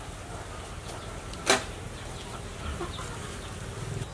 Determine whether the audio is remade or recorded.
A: recorded